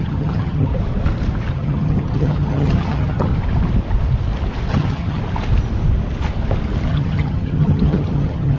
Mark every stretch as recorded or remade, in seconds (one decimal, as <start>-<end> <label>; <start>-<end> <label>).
0.0-0.7 remade; 0.7-1.5 recorded; 1.5-3.3 remade; 3.3-4.7 recorded; 4.7-5.2 remade; 5.2-6.9 recorded; 6.9-8.6 remade